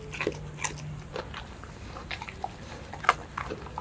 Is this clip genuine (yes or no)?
yes